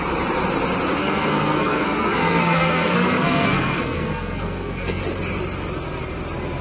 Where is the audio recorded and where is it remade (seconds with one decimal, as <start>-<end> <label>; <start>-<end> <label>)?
0.0-1.0 recorded; 1.0-5.0 remade; 5.0-6.6 recorded